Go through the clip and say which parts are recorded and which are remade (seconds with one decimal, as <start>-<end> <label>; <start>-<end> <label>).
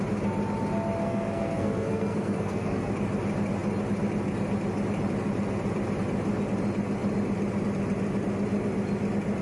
0.0-1.0 recorded; 1.0-2.9 remade; 2.9-9.4 recorded